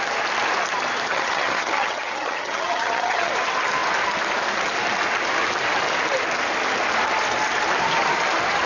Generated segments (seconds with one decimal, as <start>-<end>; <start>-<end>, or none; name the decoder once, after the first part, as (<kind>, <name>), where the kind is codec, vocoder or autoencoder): 1.1-3.3 (vocoder, HiFi-GAN)